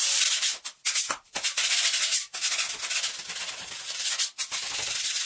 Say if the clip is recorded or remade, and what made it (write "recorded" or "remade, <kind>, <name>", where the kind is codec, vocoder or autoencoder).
recorded